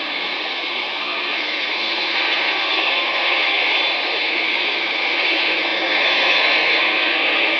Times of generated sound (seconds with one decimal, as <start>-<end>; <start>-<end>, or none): 0.0-3.6; 4.2-7.6